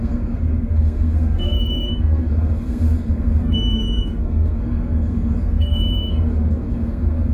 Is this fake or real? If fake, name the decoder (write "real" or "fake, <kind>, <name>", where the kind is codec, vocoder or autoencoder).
fake, codec, SNAC